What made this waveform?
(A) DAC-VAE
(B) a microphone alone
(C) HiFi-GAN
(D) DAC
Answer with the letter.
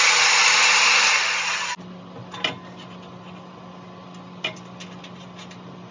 B